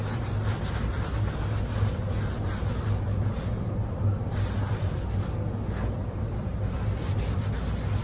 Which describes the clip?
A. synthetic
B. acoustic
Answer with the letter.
B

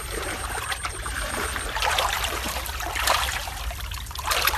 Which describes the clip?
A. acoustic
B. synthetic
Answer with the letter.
B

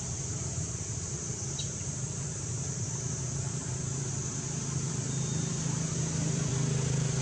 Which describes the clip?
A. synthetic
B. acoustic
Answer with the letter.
A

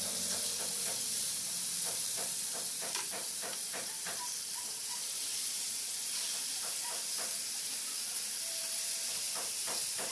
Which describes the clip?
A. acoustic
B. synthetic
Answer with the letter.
B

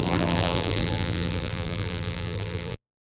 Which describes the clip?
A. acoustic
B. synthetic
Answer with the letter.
B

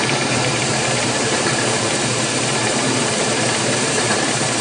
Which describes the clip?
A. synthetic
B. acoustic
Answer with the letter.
A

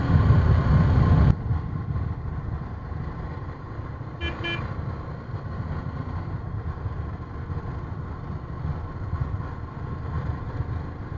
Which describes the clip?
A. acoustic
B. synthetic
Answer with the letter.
A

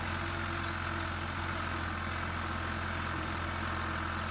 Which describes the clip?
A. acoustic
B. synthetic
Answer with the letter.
A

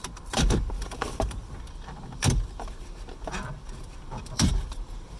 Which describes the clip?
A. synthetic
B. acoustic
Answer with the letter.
A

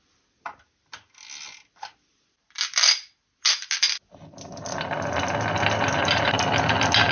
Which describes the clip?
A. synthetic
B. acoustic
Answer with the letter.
B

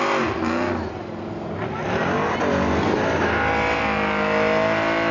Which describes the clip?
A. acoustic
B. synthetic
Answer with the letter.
A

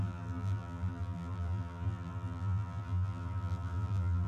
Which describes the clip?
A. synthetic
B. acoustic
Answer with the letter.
A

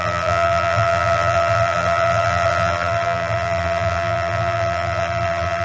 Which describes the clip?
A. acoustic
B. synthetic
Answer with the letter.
B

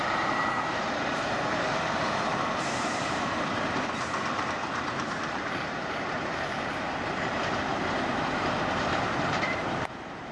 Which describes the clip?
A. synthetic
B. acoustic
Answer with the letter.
A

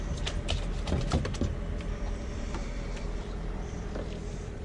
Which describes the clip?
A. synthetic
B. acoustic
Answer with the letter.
A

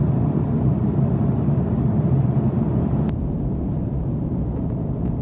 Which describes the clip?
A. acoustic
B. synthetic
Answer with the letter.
B